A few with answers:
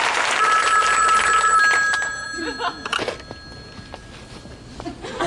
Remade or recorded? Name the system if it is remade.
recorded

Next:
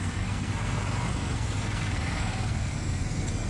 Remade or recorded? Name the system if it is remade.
remade, codec, SNAC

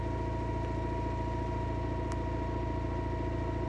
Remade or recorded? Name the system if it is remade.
recorded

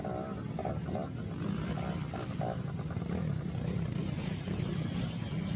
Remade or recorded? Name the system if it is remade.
recorded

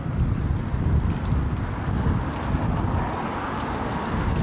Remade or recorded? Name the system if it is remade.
recorded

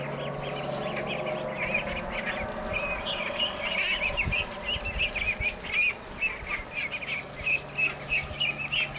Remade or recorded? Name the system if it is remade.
recorded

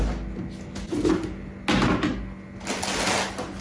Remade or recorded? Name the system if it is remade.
recorded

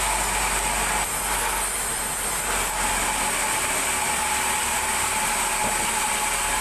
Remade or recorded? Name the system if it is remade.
recorded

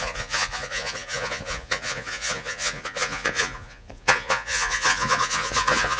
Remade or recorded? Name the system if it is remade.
remade, vocoder, Vocos